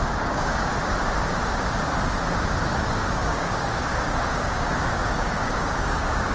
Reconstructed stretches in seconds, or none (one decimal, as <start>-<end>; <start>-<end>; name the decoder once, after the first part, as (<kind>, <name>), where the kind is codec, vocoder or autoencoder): 0.0-0.7 (codec, DAC); 2.6-6.3

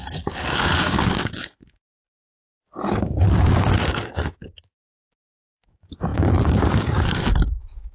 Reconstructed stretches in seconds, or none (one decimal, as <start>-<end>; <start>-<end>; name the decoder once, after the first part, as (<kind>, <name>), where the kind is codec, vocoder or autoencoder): 0.0-7.9 (codec, DAC)

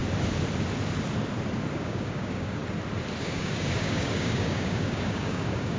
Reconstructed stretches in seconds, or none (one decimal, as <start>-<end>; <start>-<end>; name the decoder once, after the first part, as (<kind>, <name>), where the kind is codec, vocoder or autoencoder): 1.7-2.6 (codec, DAC); 3.2-5.8

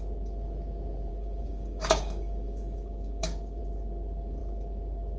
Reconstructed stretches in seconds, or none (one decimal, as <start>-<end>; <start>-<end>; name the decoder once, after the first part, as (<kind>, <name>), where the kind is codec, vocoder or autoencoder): 1.1-3.6 (codec, DAC)